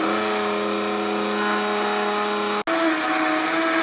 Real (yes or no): yes